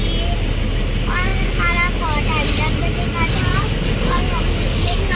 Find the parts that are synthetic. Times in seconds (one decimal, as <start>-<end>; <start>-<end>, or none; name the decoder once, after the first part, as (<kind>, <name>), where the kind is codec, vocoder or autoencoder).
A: 3.5-5.2 (codec, DAC)